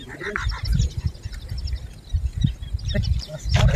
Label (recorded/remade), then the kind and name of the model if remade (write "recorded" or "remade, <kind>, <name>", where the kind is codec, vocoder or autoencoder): recorded